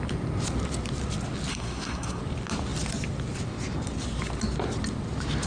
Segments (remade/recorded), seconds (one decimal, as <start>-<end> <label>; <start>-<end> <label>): 0.0-1.5 recorded; 1.5-2.2 remade; 2.2-5.5 recorded